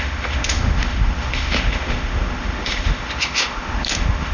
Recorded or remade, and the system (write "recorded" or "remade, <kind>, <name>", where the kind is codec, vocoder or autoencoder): remade, autoencoder, DAC-VAE